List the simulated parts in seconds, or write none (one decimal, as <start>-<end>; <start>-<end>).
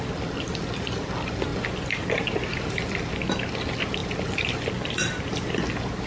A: 1.5-2.8; 4.0-5.6